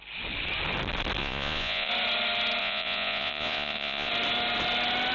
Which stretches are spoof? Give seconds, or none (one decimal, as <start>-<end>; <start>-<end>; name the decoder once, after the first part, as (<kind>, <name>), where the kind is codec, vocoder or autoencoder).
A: 1.2-1.9 (vocoder, Vocos); 2.6-4.1